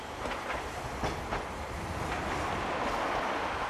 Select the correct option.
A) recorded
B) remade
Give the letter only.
A